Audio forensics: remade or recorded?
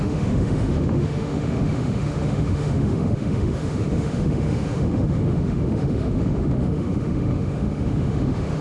remade